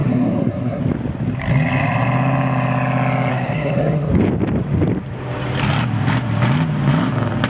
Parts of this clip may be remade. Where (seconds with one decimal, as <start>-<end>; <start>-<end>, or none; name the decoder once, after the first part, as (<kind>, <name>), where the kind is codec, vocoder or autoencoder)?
0.0-0.8 (codec, SNAC); 3.3-4.1